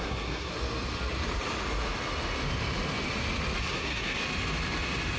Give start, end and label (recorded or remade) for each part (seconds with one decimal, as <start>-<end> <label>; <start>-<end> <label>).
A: 0.0-0.5 remade; 0.5-3.6 recorded; 3.6-4.2 remade; 4.2-5.2 recorded